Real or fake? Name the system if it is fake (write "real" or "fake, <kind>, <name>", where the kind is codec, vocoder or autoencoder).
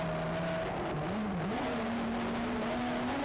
real